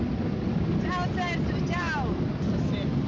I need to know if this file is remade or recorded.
recorded